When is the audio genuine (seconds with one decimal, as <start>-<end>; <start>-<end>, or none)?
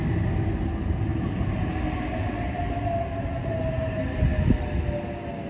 0.0-5.5